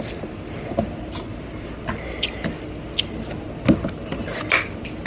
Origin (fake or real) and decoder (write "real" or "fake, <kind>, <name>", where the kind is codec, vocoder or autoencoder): real